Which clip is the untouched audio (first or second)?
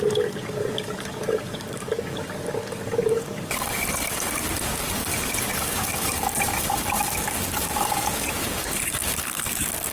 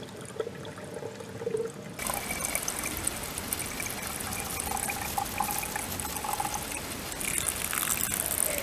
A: second